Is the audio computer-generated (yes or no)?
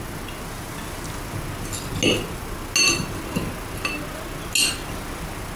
no